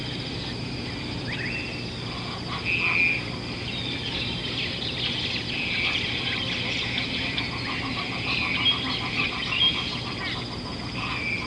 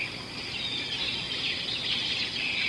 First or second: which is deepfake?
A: second